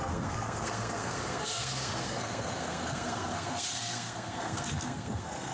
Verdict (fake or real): fake